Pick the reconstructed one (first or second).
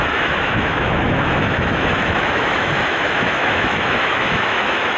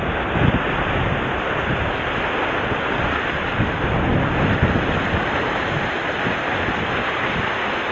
first